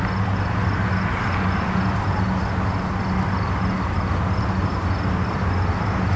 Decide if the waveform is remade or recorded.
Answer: recorded